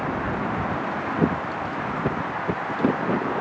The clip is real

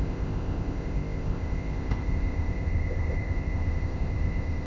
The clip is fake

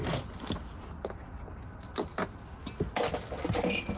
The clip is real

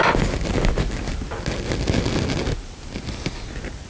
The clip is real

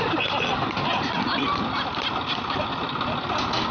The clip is real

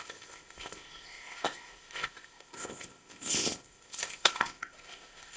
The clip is fake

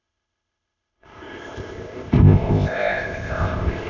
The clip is fake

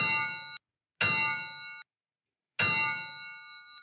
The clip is real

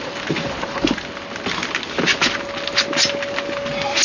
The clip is real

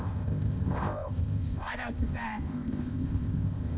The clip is fake